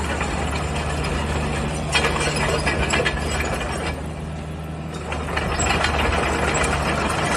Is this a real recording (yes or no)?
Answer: yes